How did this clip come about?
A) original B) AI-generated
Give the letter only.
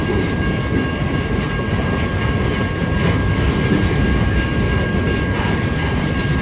A